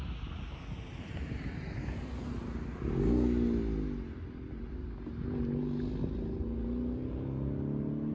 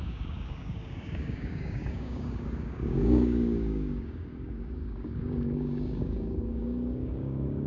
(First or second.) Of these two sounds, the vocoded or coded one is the second